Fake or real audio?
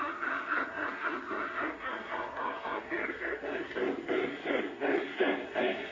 fake